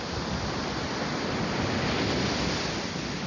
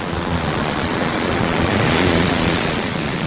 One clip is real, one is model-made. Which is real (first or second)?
first